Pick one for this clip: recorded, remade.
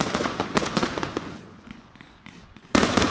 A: remade